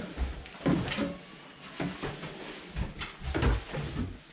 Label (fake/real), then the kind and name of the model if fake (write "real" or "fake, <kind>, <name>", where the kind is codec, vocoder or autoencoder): real